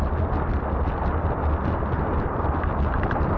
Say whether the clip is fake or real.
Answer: real